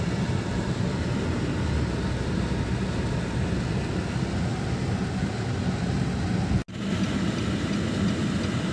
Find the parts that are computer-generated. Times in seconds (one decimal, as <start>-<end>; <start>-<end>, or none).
none